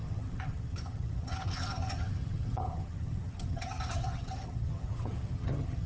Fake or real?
fake